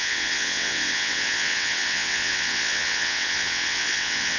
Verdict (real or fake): fake